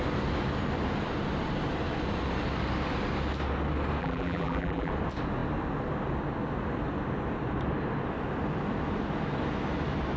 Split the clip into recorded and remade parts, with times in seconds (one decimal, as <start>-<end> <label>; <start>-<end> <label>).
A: 0.0-4.0 recorded; 4.0-4.9 remade; 4.9-10.2 recorded